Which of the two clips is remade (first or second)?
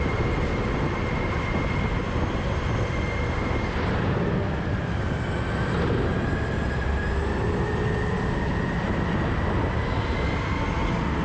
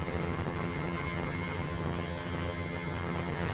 second